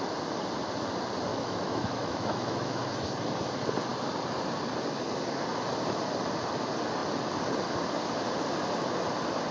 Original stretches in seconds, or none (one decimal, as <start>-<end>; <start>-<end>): 0.0-1.3; 2.8-9.5